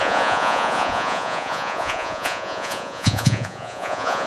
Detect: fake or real fake